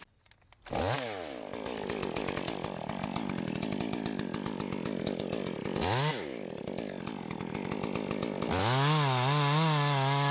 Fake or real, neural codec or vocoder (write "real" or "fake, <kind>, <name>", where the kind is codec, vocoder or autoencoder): real